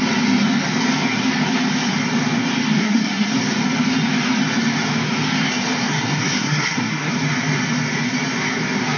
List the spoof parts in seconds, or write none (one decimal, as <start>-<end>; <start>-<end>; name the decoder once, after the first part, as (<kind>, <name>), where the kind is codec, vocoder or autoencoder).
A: 2.8-3.3 (codec, SNAC); 5.8-7.1